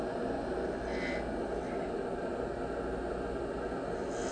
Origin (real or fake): real